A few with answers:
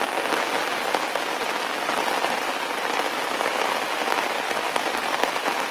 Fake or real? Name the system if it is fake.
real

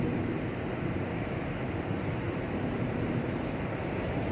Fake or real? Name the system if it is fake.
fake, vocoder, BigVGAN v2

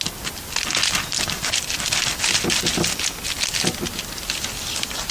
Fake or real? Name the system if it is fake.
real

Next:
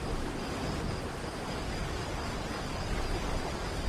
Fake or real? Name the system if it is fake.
real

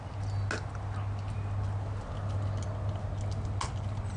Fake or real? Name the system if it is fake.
real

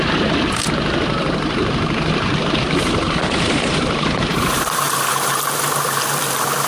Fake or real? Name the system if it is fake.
fake, vocoder, BigVGAN v2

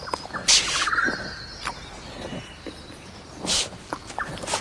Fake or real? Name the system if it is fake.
real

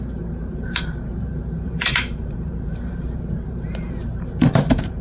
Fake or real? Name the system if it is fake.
fake, vocoder, BigVGAN v2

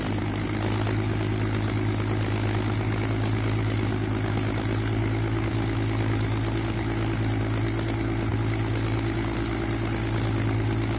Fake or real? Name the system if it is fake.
real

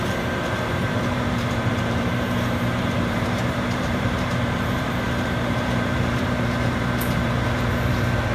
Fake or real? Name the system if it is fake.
fake, vocoder, BigVGAN v2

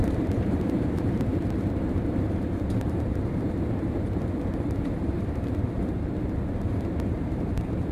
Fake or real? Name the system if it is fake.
fake, vocoder, BigVGAN v2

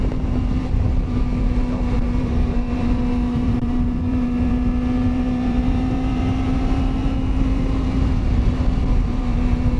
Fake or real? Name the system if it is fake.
fake, vocoder, BigVGAN v2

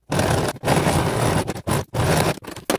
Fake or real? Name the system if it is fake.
real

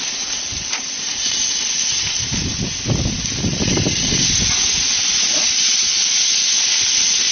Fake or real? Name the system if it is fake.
real